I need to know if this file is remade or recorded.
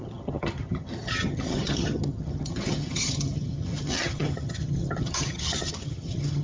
remade